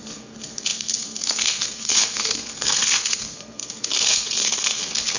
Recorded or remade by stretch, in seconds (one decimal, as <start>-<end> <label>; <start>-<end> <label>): 0.0-5.2 remade